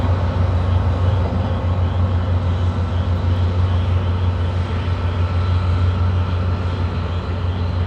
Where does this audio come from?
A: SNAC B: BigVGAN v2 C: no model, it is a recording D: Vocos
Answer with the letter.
C